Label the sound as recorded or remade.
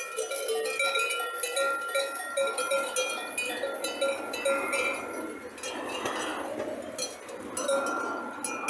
recorded